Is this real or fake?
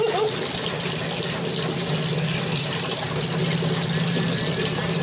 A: real